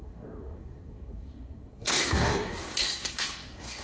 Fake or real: fake